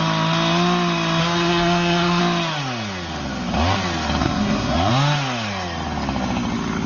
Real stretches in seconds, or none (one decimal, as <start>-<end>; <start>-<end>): 0.0-1.2; 2.2-4.2; 4.9-6.9